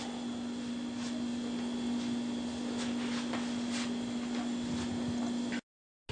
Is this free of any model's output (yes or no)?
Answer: yes